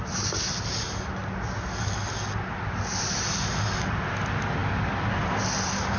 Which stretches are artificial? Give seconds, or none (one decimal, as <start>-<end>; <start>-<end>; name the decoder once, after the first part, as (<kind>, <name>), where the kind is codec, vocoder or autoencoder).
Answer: none